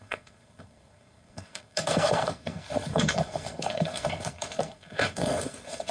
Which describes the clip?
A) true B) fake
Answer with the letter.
B